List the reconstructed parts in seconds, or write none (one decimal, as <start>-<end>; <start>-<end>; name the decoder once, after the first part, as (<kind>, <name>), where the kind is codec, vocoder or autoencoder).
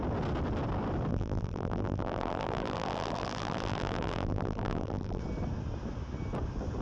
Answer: 1.1-5.2 (vocoder, BigVGAN v2)